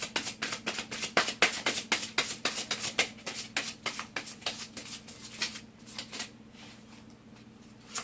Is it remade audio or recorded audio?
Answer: recorded